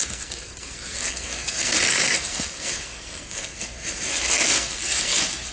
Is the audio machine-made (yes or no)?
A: yes